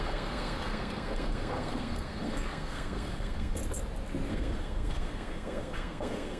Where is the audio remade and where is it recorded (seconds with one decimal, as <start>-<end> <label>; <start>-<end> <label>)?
0.0-3.6 remade; 3.6-4.3 recorded; 4.3-6.4 remade